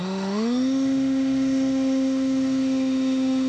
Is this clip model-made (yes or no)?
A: yes